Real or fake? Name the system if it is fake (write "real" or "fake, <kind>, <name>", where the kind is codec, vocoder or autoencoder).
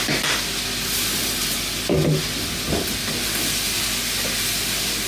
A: real